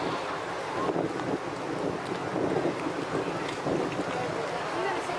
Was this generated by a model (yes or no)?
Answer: no